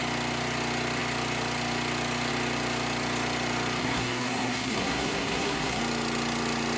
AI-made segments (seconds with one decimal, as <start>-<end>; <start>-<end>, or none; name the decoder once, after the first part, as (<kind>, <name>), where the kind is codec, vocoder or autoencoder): 3.8-5.8 (codec, SNAC)